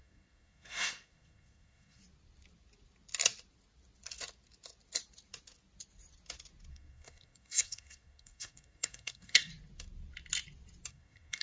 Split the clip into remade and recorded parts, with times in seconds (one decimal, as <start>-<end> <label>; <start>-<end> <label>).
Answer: 0.0-2.0 remade; 2.0-6.7 recorded; 6.7-9.5 remade; 9.5-10.9 recorded; 10.9-11.4 remade